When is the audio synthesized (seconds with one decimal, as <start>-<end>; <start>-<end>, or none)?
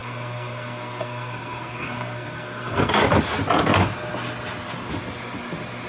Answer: 0.0-2.9